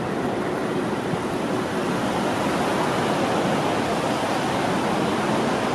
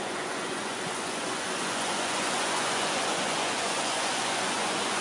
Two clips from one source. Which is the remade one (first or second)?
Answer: second